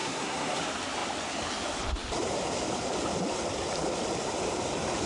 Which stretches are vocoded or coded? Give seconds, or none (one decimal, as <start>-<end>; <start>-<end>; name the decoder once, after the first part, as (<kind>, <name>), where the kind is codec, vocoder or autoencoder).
0.0-0.6 (codec, SNAC)